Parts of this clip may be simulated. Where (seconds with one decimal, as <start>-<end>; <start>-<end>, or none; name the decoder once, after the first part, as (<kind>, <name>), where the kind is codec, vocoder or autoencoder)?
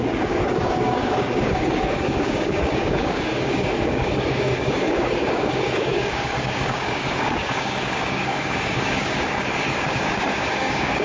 0.0-11.0 (codec, DAC)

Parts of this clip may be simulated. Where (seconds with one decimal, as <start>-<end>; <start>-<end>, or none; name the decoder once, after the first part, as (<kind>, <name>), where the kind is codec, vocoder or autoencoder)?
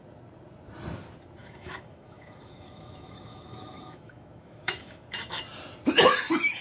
1.4-5.4 (autoencoder, DAC-VAE)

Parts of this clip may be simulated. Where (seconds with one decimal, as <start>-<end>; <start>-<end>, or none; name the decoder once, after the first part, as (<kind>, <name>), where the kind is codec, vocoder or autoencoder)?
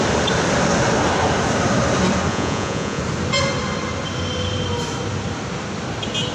2.3-3.0 (vocoder, Vocos)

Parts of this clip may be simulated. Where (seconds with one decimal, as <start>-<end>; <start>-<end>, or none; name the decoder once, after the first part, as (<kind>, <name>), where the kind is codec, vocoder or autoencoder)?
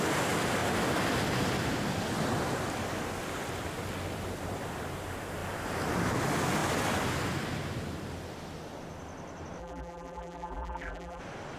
9.6-11.2 (vocoder, BigVGAN v2)